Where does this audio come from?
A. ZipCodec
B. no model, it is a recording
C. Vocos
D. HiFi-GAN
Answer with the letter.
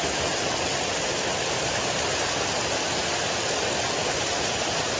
B